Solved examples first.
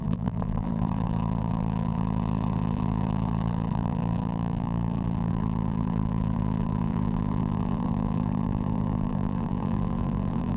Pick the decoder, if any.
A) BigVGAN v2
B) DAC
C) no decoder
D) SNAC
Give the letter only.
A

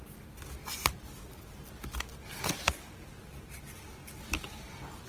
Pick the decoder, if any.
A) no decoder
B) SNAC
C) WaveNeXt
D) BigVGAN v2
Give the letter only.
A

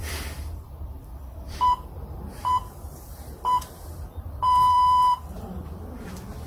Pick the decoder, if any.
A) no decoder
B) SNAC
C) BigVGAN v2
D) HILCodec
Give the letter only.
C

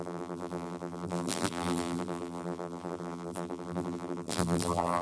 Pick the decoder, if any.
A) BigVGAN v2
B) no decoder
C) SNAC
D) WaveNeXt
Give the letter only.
A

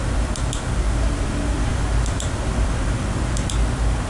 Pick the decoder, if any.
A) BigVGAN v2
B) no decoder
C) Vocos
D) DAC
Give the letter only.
A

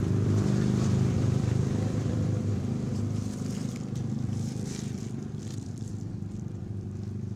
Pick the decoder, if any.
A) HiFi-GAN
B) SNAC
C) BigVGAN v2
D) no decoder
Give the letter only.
C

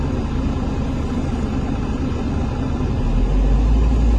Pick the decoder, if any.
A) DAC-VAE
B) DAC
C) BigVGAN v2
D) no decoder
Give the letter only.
D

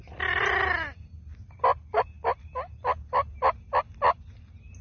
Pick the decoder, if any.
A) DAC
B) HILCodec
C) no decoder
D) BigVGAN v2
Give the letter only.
C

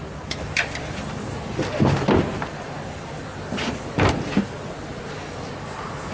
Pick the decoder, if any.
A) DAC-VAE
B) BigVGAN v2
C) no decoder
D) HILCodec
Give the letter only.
B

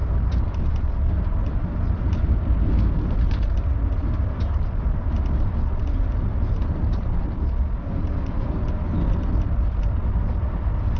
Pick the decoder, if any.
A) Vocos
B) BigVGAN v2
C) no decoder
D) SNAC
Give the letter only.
C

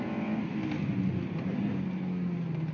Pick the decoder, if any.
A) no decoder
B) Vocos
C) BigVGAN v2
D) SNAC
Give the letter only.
A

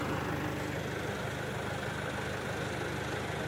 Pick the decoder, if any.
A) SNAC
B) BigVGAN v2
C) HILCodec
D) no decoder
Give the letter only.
D